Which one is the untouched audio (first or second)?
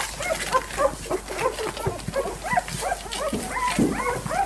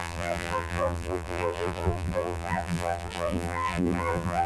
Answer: first